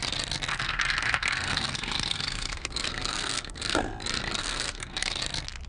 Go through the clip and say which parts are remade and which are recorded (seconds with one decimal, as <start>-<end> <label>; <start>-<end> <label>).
0.0-0.5 recorded; 0.5-3.9 remade; 3.9-4.4 recorded; 4.4-5.2 remade; 5.2-5.7 recorded